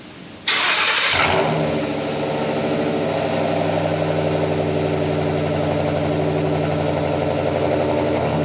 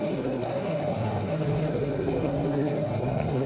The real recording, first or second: first